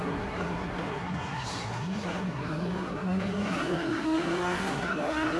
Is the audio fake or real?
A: fake